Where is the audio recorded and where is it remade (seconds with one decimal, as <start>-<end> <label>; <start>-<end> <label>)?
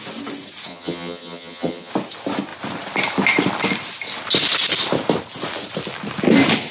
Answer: 0.0-0.7 recorded; 0.7-1.9 remade; 1.9-6.7 recorded